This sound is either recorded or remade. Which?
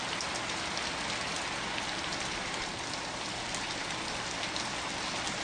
recorded